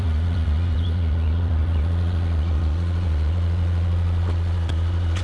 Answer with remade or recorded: remade